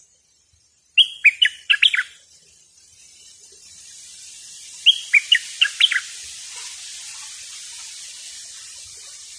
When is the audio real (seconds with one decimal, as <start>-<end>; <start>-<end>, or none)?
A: 0.0-9.4